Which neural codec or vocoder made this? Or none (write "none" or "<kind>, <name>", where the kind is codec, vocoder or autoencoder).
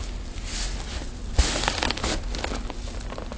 none